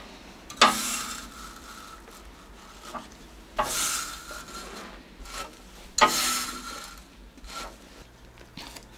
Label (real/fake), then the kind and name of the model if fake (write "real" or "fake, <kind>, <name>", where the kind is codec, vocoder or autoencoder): real